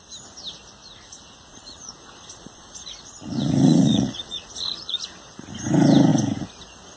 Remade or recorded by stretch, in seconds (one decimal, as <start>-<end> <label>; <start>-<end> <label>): 0.0-0.8 recorded; 0.8-5.0 remade; 5.0-7.0 recorded